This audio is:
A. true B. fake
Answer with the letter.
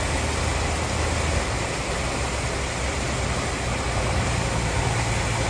A